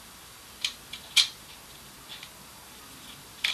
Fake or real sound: real